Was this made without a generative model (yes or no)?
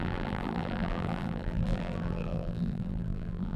no